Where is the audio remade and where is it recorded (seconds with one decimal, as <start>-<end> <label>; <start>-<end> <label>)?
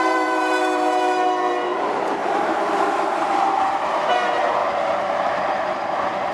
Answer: 0.0-6.3 remade